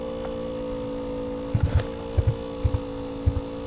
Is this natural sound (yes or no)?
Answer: yes